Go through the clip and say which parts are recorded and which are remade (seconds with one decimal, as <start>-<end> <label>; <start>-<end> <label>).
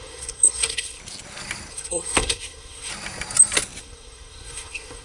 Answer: 0.0-1.0 remade; 1.0-1.7 recorded; 1.7-2.9 remade; 2.9-3.8 recorded; 3.8-5.0 remade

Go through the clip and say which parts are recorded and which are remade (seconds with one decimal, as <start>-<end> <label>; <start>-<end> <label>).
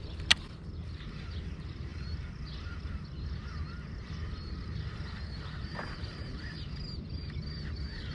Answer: 0.0-5.7 recorded; 5.7-6.4 remade; 6.4-8.1 recorded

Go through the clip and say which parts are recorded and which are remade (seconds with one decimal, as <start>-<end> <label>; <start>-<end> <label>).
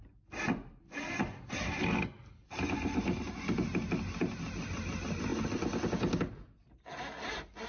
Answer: 0.0-7.7 recorded